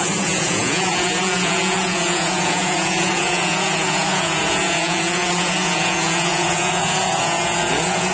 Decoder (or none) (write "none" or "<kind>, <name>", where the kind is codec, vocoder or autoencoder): vocoder, Vocos